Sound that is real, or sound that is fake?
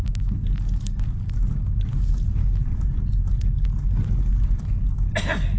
real